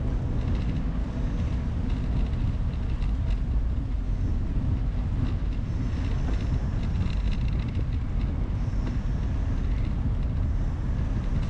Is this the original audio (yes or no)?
yes